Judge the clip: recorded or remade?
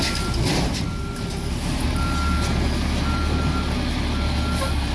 recorded